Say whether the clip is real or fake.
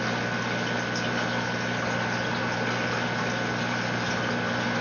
real